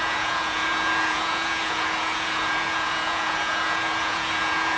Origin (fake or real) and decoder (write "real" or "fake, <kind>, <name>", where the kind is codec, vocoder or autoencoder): fake, vocoder, Vocos